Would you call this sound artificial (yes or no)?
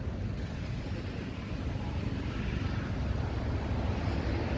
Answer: no